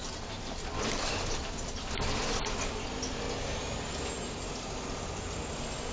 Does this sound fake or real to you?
real